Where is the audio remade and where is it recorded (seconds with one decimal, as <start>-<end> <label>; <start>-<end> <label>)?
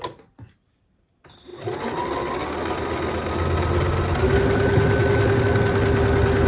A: 0.0-6.5 recorded